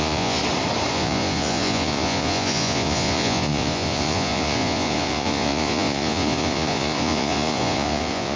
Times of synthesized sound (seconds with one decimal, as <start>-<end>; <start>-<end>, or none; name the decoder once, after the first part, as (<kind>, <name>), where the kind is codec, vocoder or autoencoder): 0.0-0.4 (vocoder, Vocos); 0.9-8.4